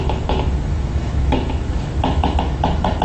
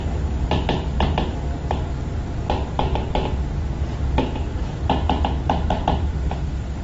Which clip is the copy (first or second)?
first